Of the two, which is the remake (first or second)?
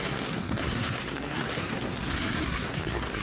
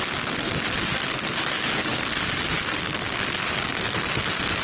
first